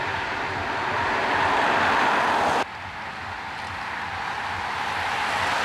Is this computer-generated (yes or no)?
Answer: no